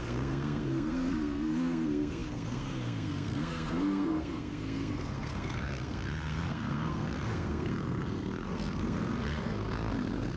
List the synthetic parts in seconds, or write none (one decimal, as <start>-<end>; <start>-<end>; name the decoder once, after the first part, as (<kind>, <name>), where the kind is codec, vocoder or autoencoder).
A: 0.0-10.4 (codec, SNAC)

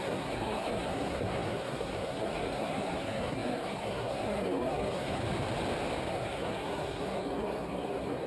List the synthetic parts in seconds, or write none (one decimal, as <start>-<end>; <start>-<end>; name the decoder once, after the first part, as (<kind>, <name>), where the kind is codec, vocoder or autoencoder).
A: 0.0-5.2 (codec, SNAC); 6.1-8.3

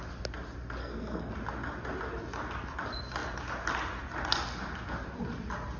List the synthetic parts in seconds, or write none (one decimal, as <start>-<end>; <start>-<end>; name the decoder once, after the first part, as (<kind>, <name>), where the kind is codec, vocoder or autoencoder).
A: 0.8-1.3 (codec, SNAC)

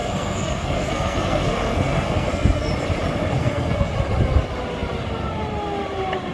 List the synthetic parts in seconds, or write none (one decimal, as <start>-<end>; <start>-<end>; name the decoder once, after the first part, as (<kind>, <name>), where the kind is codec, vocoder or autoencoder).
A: 0.0-2.7 (codec, SNAC); 3.4-3.9

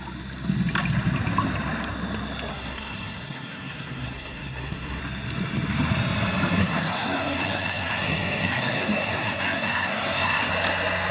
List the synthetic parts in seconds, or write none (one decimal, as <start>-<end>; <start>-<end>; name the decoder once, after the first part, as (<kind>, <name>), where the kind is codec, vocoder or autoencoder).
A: 2.5-5.0 (codec, SNAC); 6.6-10.5

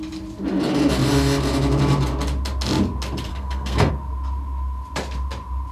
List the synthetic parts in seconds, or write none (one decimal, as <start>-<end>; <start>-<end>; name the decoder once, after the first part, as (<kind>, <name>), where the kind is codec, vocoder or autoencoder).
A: 3.3-3.9 (codec, SNAC)

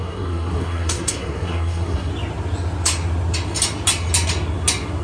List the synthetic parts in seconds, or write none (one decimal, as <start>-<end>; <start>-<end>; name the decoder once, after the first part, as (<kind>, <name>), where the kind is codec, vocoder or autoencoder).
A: 0.0-2.1 (codec, SNAC)